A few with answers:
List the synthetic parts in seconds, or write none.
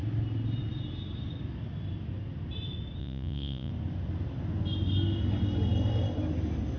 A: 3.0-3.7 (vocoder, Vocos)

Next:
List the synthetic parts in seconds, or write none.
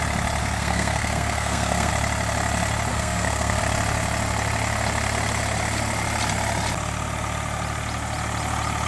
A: 0.4-1.9 (codec, SNAC); 2.9-3.6